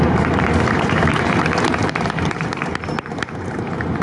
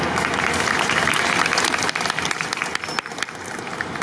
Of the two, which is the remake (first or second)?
first